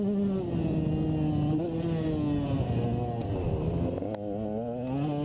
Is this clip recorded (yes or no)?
yes